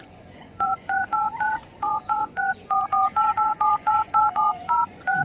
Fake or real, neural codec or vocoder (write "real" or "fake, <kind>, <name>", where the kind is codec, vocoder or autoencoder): fake, vocoder, Vocos